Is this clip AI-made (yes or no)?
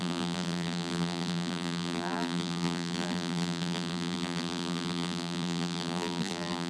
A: yes